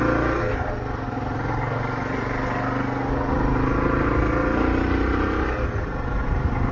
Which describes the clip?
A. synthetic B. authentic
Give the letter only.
B